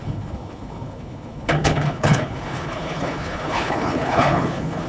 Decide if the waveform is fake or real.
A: fake